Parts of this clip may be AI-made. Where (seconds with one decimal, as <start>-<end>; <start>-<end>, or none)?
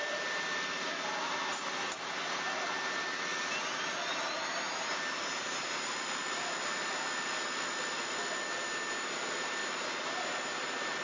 none